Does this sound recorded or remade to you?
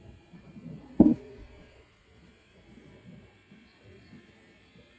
remade